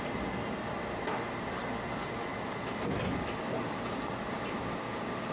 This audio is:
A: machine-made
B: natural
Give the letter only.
B